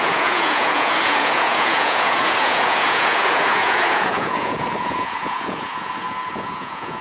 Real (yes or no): no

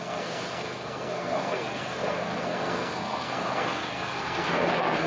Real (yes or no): no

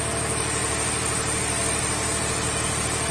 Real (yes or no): yes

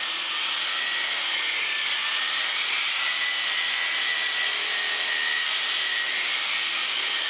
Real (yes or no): yes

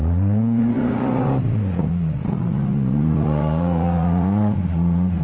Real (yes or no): no